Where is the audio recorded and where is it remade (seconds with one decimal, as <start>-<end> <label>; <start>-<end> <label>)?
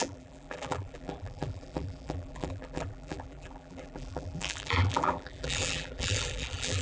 0.0-6.8 remade